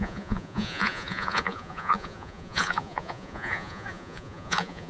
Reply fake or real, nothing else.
fake